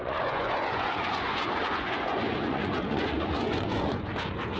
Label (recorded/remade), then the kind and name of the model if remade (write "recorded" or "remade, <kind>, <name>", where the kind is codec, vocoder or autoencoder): remade, vocoder, Vocos